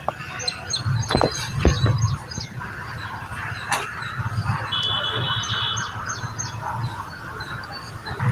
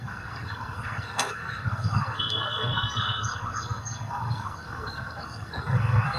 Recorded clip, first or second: first